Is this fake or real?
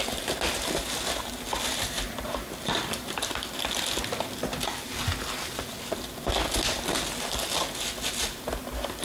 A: real